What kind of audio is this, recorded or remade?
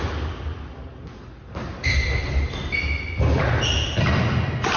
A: recorded